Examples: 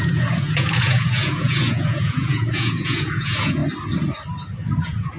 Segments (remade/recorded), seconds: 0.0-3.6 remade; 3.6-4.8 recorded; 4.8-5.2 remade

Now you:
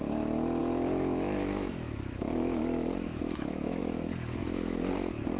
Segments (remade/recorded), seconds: 0.0-0.6 recorded; 0.6-3.8 remade; 3.8-4.4 recorded; 4.4-4.9 remade; 4.9-5.4 recorded

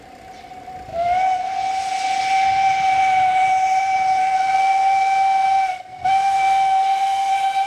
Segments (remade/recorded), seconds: 0.0-4.2 recorded; 4.2-7.3 remade; 7.3-7.7 recorded

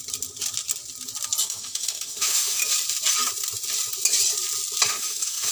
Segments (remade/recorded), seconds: 0.0-1.4 recorded; 1.4-2.6 remade; 2.6-4.9 recorded; 4.9-5.5 remade

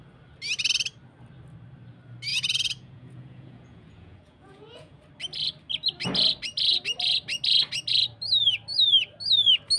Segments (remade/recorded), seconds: 0.0-2.3 recorded; 2.3-5.0 remade; 5.0-9.8 recorded